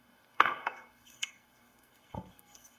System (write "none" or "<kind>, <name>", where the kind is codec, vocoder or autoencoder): codec, SNAC